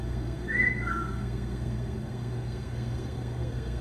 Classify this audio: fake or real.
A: fake